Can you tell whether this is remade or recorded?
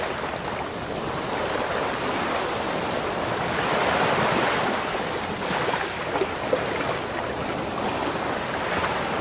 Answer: recorded